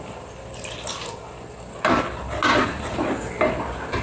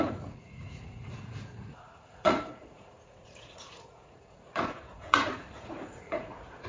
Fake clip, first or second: second